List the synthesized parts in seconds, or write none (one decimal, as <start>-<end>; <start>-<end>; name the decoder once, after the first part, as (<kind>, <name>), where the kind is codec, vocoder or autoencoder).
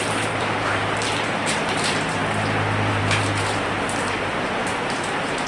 0.0-2.2 (vocoder, BigVGAN v2); 2.9-5.5